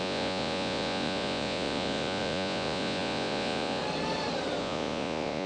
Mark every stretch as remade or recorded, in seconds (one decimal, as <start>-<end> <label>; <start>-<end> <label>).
0.0-3.8 remade; 3.8-4.6 recorded; 4.6-5.5 remade